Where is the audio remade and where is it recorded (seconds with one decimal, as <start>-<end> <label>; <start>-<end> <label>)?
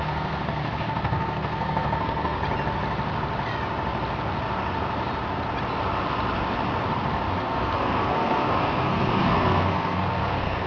0.0-2.4 remade; 2.4-7.4 recorded; 7.4-10.7 remade